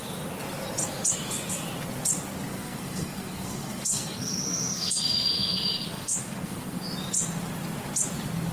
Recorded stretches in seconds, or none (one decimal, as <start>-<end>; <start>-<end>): 0.0-2.5; 6.8-8.5